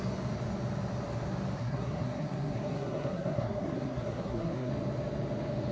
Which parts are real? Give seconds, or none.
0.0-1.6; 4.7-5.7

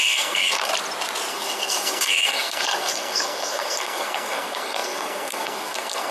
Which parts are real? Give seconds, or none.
0.7-1.3

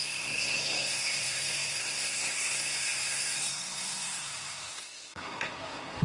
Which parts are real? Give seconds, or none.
none

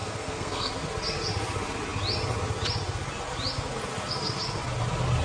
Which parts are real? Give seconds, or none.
0.7-5.2